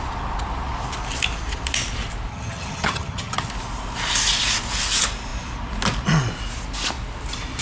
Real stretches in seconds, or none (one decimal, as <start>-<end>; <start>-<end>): 0.0-2.3; 3.5-7.6